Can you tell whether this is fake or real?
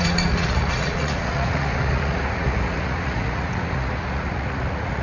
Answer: fake